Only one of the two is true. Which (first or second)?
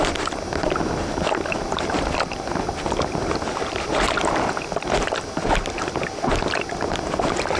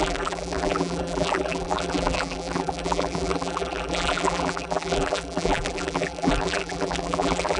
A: first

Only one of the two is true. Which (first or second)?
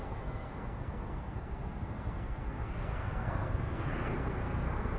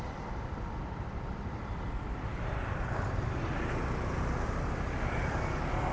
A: second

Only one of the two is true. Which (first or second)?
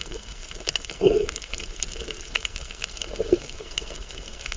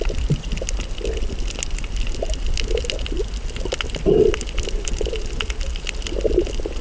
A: second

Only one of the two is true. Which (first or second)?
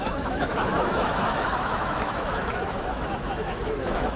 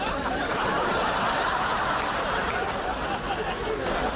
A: second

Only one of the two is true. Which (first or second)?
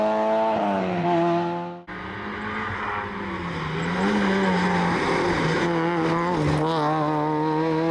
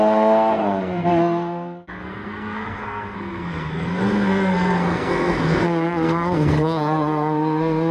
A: first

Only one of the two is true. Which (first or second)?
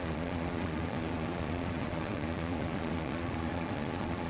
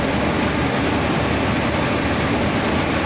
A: second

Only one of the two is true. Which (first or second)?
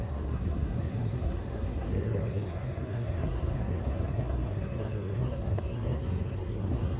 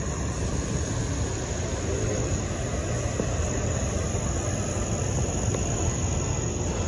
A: second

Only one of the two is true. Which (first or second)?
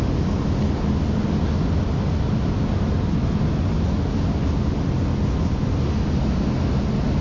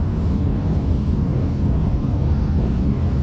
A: first